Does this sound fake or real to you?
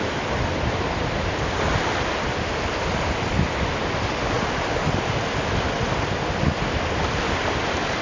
real